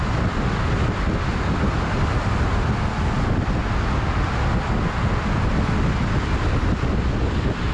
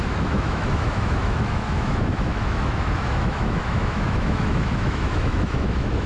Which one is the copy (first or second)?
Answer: second